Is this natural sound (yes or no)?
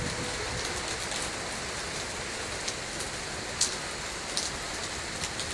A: yes